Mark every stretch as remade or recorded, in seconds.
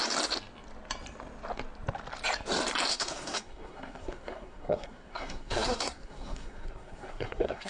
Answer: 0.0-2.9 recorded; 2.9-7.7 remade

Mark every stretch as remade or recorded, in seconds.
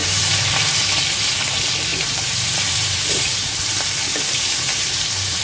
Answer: 0.0-1.3 remade; 1.3-1.9 recorded; 1.9-5.4 remade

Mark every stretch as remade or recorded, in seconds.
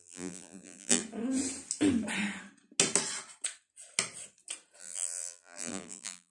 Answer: 0.0-1.0 remade; 1.0-4.8 recorded; 4.8-6.3 remade